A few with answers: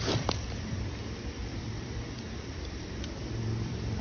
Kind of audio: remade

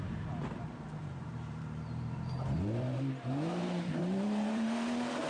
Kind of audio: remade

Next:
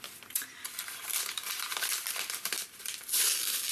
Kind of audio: remade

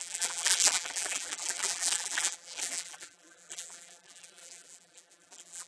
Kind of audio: remade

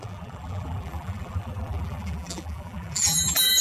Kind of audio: remade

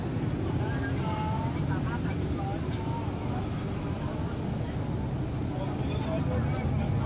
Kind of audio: recorded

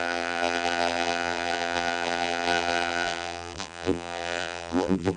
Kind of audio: remade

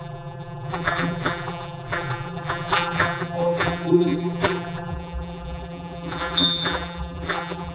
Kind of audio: remade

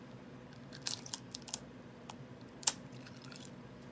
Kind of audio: remade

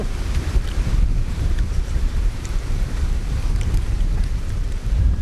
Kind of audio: remade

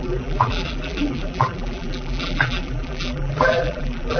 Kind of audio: remade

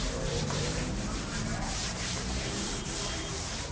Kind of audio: remade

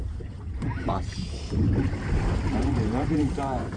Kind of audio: remade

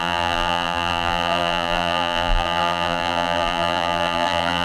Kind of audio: remade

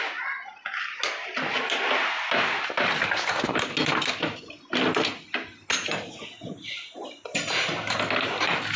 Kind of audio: recorded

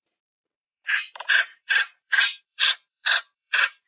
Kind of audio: remade